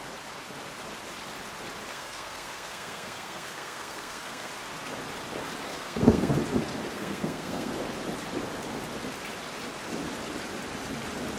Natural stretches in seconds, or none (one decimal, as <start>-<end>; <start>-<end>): 0.0-1.9; 4.5-5.7; 6.3-6.9; 7.7-11.4

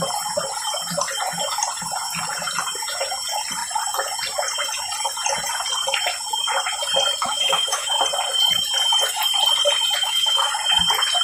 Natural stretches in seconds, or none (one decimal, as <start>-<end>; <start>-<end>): 0.0-7.2; 8.0-10.0; 10.5-11.2

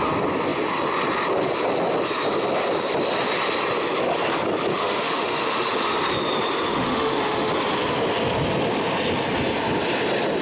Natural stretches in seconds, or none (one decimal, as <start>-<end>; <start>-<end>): 0.0-4.7; 5.9-6.7; 7.5-10.4